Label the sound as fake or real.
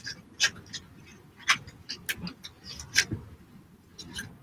real